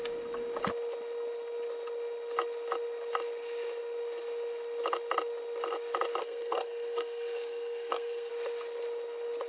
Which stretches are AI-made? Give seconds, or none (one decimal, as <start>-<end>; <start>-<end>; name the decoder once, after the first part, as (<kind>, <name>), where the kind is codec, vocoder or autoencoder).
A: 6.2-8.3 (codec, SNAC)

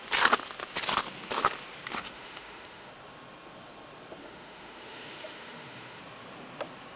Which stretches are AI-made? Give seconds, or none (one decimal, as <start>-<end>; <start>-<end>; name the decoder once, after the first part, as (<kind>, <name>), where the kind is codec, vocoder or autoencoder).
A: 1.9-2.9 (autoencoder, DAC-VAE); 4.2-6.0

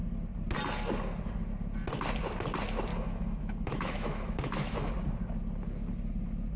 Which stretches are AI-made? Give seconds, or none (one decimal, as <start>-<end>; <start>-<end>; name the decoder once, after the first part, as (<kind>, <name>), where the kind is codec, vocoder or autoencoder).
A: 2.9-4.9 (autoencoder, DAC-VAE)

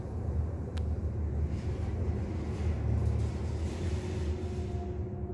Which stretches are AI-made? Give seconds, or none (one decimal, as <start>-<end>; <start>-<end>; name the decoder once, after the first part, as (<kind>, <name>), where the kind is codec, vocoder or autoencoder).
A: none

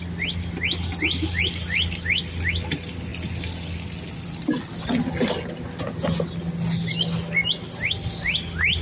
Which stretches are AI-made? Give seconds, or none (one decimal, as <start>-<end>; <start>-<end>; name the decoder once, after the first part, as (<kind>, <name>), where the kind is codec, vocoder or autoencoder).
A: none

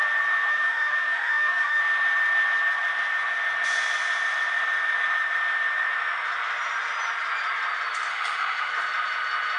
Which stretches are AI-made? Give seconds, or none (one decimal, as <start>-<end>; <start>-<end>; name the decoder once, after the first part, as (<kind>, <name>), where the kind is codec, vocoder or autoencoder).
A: 0.5-1.8 (autoencoder, DAC-VAE); 8.1-8.7

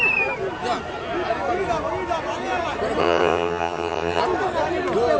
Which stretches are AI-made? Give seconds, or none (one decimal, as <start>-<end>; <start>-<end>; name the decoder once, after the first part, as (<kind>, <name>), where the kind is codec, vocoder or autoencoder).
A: 3.0-4.2 (vocoder, HiFi-GAN)

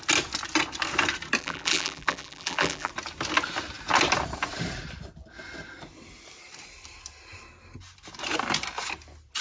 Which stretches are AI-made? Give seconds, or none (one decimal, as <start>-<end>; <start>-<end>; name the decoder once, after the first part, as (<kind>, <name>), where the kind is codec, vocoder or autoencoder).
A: 1.4-2.9 (vocoder, BigVGAN v2)